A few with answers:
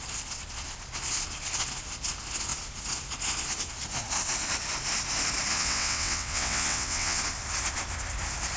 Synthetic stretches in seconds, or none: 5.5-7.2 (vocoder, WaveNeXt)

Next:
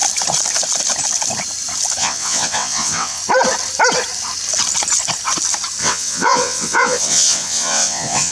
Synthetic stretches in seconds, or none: 2.0-3.2 (vocoder, WaveNeXt); 5.8-8.3

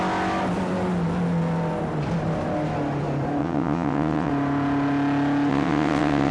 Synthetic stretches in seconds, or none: 3.4-4.3 (vocoder, WaveNeXt); 5.5-6.3

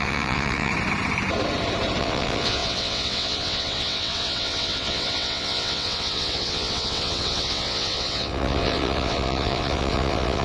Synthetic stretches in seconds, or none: 0.0-0.7 (vocoder, WaveNeXt); 2.0-10.4

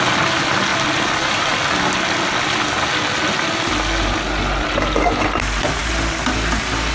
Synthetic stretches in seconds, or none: none

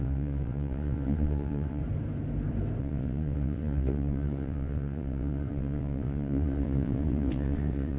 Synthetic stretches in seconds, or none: 0.0-1.8 (vocoder, WaveNeXt); 2.8-8.0

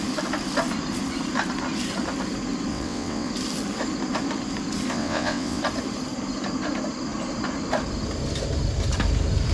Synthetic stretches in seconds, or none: 2.7-3.3 (vocoder, WaveNeXt); 4.9-5.6

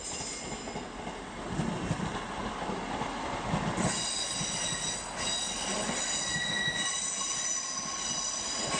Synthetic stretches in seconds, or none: none